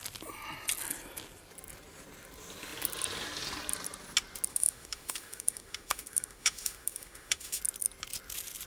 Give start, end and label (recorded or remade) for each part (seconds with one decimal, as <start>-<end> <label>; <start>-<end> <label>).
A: 0.0-4.5 recorded; 4.5-7.6 remade; 7.6-8.7 recorded